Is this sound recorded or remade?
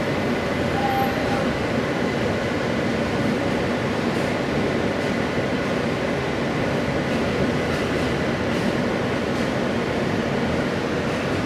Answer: recorded